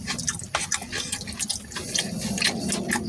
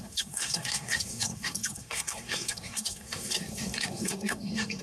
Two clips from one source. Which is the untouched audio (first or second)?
first